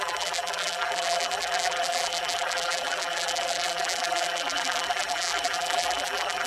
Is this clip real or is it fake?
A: fake